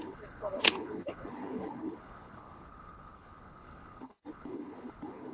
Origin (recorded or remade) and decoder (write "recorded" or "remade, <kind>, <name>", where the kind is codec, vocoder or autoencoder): remade, codec, HILCodec